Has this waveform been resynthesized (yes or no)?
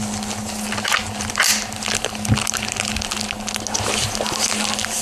no